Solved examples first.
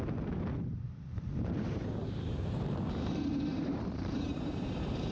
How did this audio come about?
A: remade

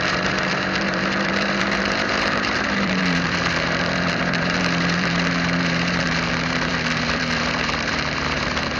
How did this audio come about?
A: remade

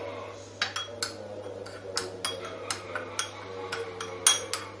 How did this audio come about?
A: recorded